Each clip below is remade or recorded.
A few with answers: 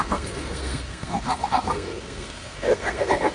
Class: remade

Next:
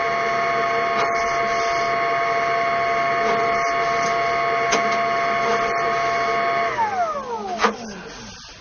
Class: recorded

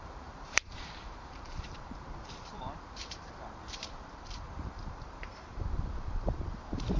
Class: remade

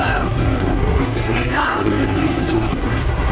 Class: remade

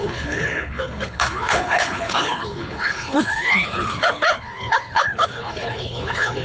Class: remade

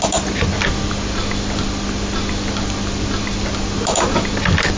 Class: recorded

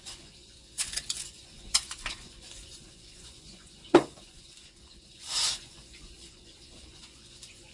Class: remade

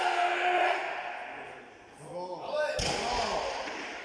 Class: recorded